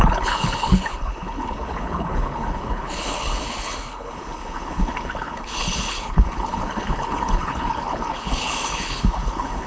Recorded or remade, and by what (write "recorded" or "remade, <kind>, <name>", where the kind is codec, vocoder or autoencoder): remade, codec, HILCodec